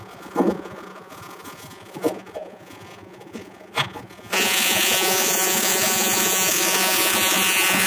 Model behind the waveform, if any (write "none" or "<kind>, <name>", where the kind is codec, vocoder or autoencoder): vocoder, Vocos